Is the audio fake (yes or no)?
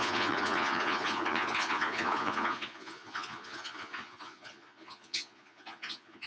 yes